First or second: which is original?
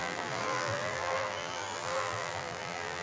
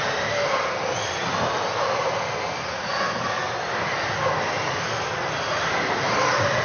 second